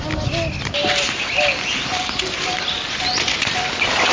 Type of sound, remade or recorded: recorded